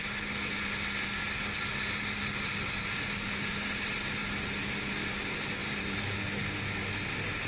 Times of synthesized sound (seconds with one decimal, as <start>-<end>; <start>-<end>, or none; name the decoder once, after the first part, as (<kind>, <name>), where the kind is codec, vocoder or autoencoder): 5.6-6.2 (vocoder, BigVGAN v2)